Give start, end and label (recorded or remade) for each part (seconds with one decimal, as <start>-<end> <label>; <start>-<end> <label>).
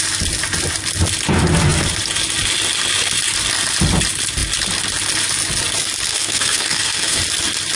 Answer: 0.0-6.1 recorded; 6.1-7.2 remade; 7.2-7.7 recorded